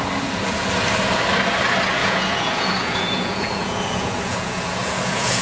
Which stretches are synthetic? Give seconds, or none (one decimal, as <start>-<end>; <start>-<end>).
2.0-5.4